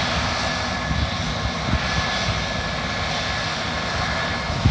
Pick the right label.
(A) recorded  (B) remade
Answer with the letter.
A